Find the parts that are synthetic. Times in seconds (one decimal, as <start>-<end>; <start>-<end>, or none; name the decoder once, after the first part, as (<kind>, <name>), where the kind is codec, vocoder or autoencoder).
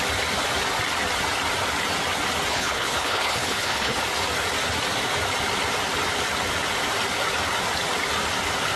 2.5-4.0 (codec, HILCodec)